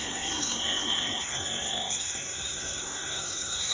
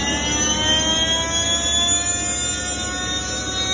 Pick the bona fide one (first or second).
second